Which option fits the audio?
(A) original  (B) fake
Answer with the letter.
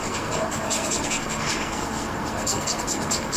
B